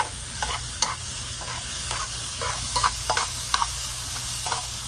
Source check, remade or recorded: remade